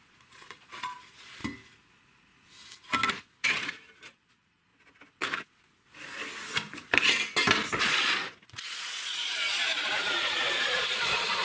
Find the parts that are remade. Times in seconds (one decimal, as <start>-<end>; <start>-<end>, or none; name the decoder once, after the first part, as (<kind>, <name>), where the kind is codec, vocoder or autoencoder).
0.0-1.4 (vocoder, Vocos); 3.1-4.7; 7.8-11.4